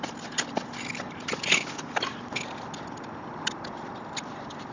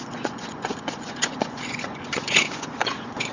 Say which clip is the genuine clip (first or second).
first